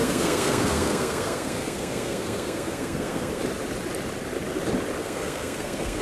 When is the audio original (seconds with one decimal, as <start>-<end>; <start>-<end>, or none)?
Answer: 3.4-5.0